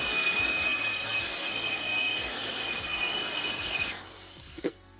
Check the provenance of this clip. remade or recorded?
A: remade